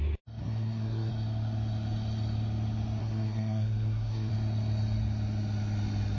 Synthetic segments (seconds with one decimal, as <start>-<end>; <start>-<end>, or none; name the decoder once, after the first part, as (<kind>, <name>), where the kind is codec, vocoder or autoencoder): 0.4-1.1 (codec, SNAC); 3.0-4.3